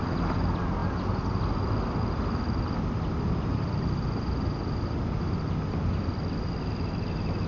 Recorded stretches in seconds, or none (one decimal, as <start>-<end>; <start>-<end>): 0.0-7.5